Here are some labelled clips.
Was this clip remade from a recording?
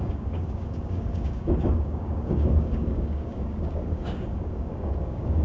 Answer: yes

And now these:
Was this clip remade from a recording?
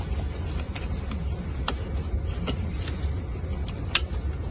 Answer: no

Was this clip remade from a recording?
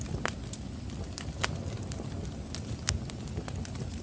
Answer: no